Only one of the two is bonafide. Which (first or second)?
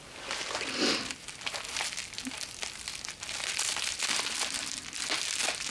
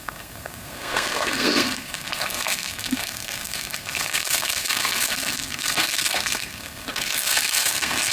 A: first